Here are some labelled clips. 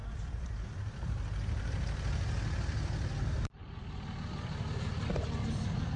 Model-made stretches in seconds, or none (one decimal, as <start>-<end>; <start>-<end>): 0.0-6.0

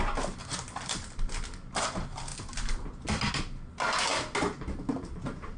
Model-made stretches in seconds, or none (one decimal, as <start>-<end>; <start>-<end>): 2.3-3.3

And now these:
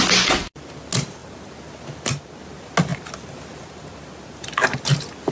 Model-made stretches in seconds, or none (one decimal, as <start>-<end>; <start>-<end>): none

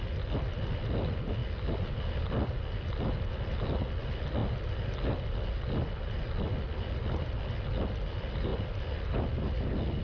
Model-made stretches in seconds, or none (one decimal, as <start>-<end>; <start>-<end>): none

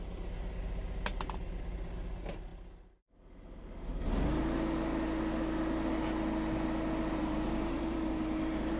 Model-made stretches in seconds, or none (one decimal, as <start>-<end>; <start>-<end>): 0.0-2.5; 7.1-8.8

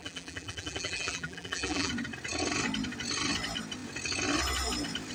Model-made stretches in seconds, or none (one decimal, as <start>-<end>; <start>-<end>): 0.0-1.9